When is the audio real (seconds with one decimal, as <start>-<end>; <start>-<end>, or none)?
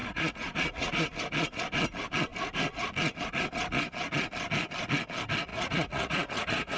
0.9-5.5